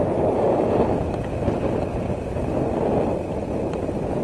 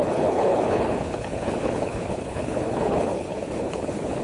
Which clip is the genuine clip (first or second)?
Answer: first